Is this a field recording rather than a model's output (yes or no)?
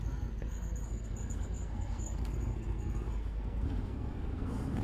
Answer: no